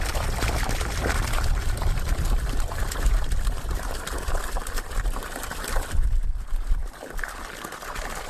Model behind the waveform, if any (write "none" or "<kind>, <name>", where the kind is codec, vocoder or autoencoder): none